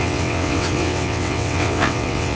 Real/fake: fake